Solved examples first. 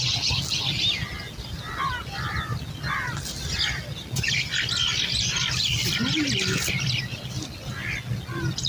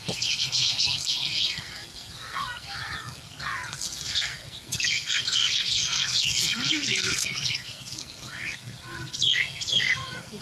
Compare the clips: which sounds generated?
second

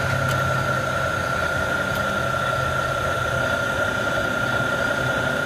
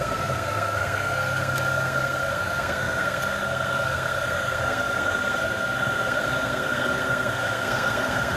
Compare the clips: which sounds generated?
second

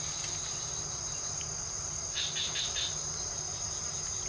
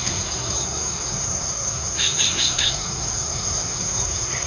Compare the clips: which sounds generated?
second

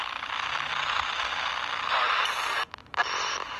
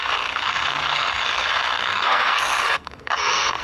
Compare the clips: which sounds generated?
second